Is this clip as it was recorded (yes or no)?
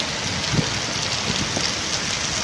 yes